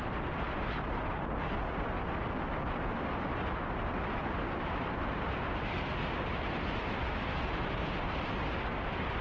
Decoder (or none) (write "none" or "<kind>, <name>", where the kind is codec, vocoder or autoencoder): none